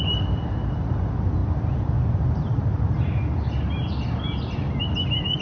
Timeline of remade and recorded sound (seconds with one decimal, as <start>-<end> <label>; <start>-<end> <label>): 0.0-5.4 recorded